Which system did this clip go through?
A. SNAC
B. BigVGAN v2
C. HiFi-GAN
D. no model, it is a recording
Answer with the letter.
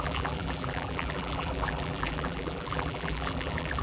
B